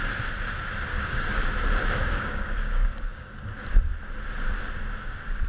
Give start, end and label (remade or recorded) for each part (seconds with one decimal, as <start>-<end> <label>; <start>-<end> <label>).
0.0-0.9 recorded; 0.9-1.4 remade; 1.4-2.0 recorded; 2.0-3.3 remade; 3.3-5.5 recorded